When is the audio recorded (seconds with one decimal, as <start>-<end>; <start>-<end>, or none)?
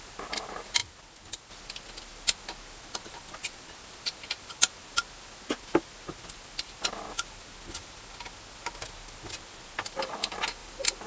0.0-10.6